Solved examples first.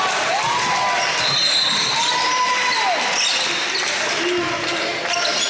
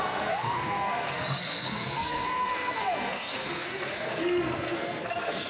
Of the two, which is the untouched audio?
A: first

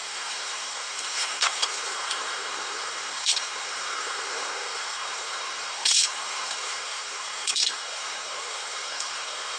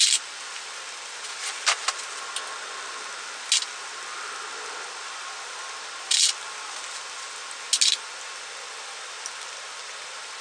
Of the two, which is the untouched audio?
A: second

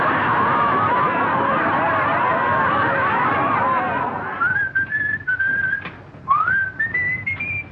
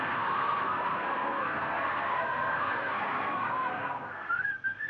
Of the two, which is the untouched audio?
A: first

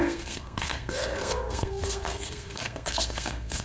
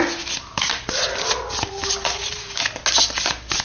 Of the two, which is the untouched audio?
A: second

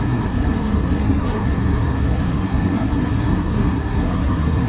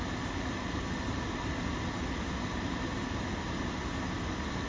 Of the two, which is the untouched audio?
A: second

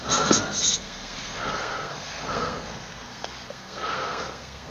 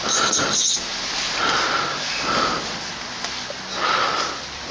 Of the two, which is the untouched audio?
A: second